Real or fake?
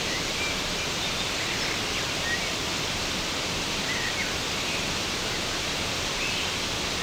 real